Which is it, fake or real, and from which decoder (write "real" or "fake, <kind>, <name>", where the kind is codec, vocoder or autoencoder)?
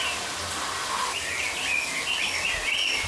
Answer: real